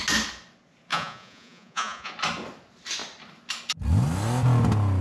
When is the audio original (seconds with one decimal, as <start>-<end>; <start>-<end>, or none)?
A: 0.0-0.9; 2.1-5.0